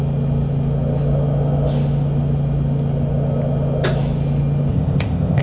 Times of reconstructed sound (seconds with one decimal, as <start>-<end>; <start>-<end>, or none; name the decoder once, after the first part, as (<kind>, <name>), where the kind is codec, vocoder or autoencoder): 4.7-5.4 (codec, ZipCodec)